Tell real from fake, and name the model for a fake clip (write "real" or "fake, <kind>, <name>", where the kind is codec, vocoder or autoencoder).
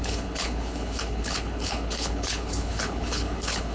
fake, codec, HILCodec